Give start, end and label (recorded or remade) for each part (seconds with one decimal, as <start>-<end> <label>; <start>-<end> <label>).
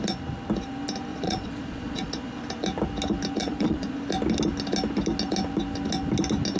0.0-1.1 recorded; 1.1-2.3 remade; 2.3-3.4 recorded; 3.4-4.0 remade; 4.0-6.6 recorded